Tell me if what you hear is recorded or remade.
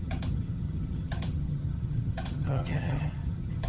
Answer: remade